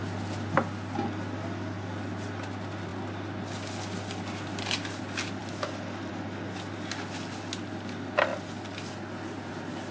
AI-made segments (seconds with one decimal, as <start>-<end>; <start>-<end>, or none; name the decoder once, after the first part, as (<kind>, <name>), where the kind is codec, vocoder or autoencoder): none